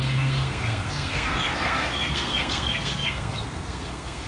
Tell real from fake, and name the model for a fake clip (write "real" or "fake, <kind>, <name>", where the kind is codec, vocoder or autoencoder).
fake, codec, SNAC